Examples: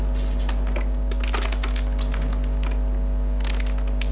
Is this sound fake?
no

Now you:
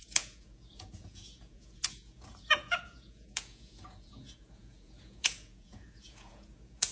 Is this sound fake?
yes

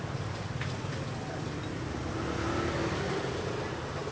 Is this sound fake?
no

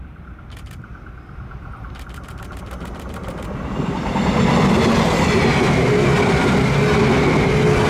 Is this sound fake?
no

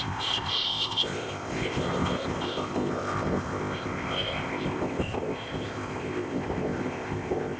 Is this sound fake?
yes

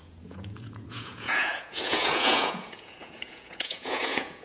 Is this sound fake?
yes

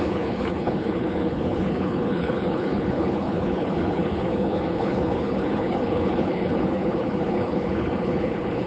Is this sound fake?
yes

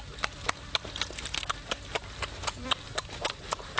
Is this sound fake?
no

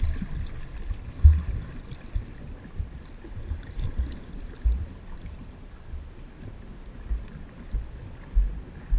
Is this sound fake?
no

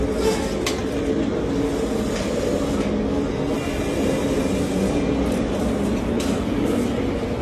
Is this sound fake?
no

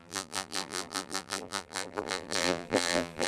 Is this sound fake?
yes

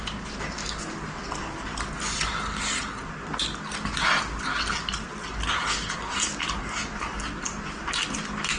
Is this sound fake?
no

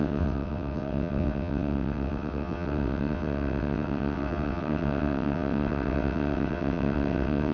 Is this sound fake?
yes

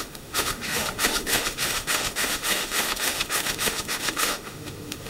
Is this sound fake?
yes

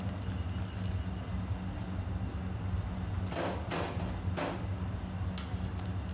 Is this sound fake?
no